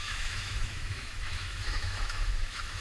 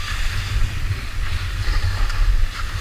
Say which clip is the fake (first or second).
first